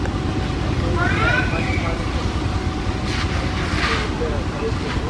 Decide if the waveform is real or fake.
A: real